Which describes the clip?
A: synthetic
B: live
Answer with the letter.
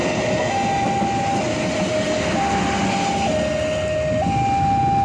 B